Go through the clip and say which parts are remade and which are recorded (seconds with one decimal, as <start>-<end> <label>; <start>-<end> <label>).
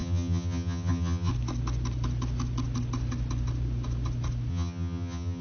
0.0-1.3 remade; 1.3-4.5 recorded; 4.5-5.4 remade